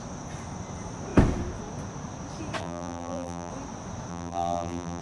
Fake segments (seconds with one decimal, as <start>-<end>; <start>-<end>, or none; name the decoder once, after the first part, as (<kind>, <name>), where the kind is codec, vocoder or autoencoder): 2.6-3.5 (vocoder, BigVGAN v2); 4.1-5.0